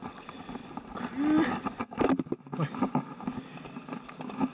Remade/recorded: recorded